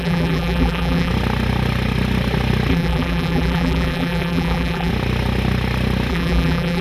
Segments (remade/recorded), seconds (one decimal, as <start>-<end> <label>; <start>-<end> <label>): 0.0-1.1 remade; 1.1-2.7 recorded; 2.7-4.9 remade; 4.9-6.1 recorded; 6.1-6.8 remade